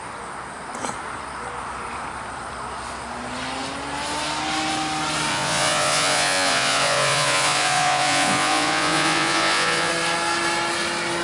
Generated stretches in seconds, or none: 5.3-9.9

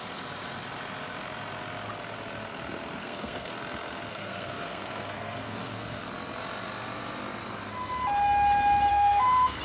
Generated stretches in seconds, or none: 3.0-3.5; 4.1-6.1; 8.9-9.6

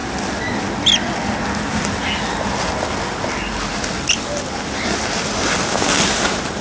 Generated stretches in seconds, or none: none

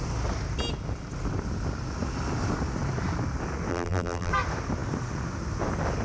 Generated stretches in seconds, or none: 3.7-4.3

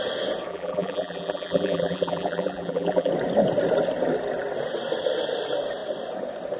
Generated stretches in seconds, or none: 0.5-3.1

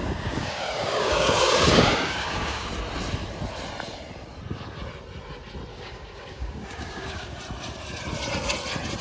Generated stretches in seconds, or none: 0.0-2.7; 5.7-7.4

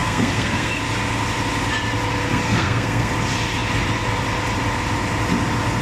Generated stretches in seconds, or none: 0.0-0.7; 2.3-3.1